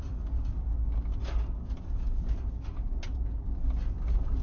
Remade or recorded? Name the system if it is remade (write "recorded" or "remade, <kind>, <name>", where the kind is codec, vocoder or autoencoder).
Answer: recorded